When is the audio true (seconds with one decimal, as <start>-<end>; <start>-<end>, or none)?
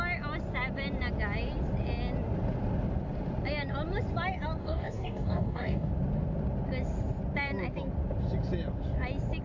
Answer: 0.0-4.6; 5.9-9.4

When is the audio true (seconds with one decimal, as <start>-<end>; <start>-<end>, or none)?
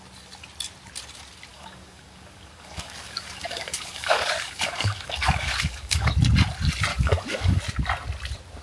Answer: 0.0-1.5; 6.1-6.9; 7.6-8.6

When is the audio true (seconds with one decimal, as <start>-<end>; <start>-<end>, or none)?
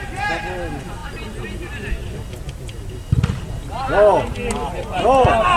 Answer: 0.0-5.6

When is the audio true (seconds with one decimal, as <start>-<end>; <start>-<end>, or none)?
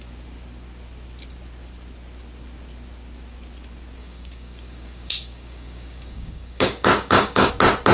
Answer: 0.0-4.0; 7.5-7.9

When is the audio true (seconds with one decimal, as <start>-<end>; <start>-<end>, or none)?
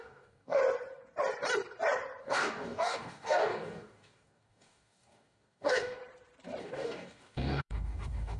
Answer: 0.6-2.2; 6.0-6.6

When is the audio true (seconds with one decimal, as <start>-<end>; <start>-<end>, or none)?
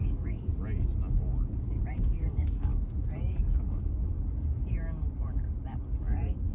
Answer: 0.5-1.8; 2.7-3.2; 4.1-6.0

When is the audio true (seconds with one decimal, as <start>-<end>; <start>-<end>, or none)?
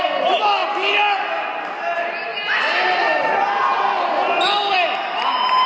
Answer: 0.0-5.7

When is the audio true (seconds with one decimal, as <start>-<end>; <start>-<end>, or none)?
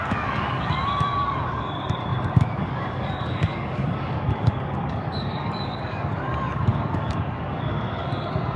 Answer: none